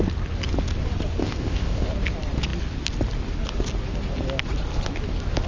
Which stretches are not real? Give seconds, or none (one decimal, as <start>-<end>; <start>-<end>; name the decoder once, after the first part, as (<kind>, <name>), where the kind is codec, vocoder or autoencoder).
1.2-1.9 (codec, ZipCodec)